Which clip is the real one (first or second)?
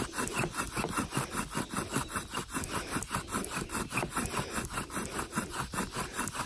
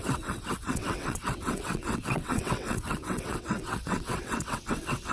first